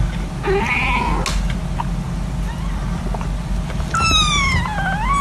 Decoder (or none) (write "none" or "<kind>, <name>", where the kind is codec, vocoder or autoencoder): none